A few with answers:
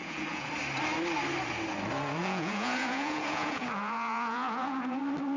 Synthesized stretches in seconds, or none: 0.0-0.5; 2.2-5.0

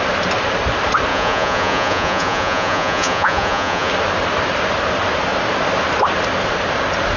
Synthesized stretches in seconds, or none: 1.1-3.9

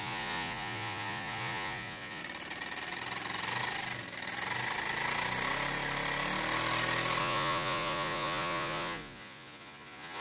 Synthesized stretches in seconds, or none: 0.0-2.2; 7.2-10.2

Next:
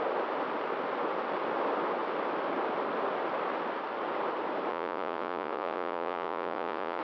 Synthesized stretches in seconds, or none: 4.7-7.0

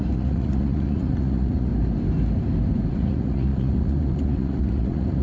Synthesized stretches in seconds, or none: 0.0-1.7; 2.9-5.2

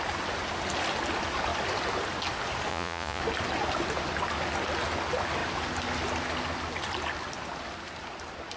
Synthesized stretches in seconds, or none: 2.7-3.2

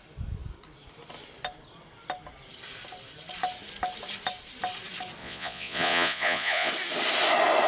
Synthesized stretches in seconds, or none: 5.2-6.7

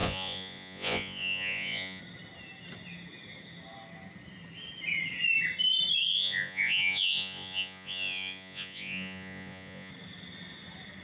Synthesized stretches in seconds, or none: 0.0-2.0; 6.1-9.9